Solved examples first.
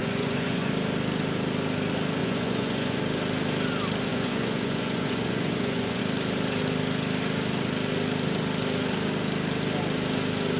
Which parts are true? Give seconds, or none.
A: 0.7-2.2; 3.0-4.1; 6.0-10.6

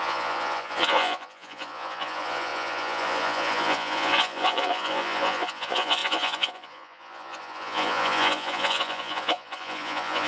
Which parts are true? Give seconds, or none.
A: none

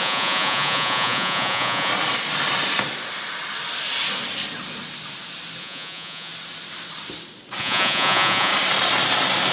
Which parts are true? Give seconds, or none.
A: 1.9-5.6; 6.3-7.6; 8.5-9.5

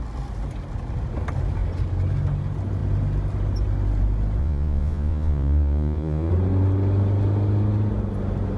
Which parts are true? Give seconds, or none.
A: 0.0-4.4; 6.3-8.6

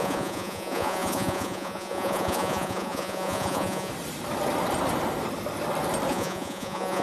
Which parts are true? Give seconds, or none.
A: 3.9-6.1

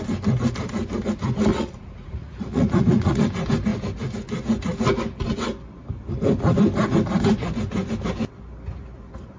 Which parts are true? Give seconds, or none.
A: 0.0-1.5; 3.2-9.4

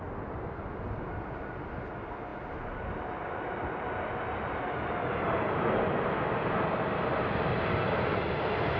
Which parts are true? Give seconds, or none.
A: 0.0-8.8

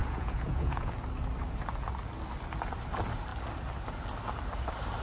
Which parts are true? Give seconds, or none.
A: 0.9-5.0